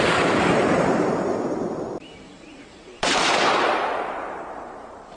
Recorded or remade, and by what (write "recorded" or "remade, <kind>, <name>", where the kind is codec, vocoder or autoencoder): remade, vocoder, BigVGAN v2